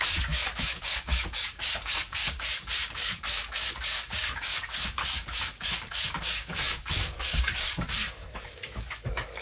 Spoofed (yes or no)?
yes